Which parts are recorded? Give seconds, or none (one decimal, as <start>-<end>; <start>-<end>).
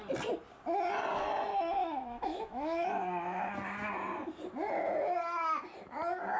0.0-1.8; 3.0-6.4